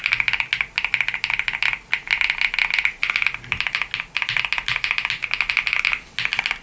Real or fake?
real